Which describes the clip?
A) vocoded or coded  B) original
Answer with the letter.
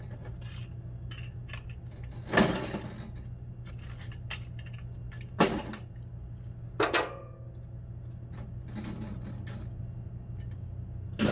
B